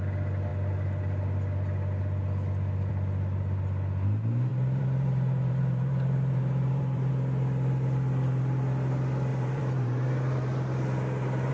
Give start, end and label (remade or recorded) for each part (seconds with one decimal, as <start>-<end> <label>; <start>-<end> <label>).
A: 0.0-4.5 recorded; 4.5-7.1 remade; 7.1-9.3 recorded; 9.3-11.5 remade